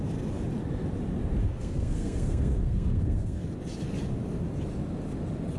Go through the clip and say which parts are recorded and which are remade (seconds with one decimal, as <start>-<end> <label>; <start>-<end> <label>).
0.0-1.4 recorded; 1.4-3.5 remade; 3.5-5.6 recorded